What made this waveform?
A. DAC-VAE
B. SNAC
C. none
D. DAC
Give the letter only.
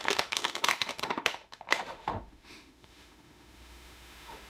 A